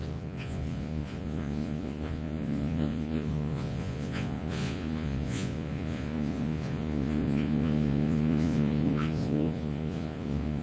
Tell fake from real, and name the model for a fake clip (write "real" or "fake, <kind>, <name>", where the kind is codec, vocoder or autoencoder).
fake, vocoder, Vocos